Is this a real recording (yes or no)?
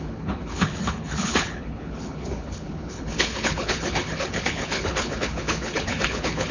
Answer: no